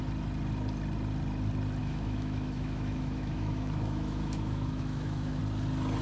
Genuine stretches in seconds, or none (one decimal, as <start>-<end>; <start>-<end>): 0.0-1.8; 5.4-6.0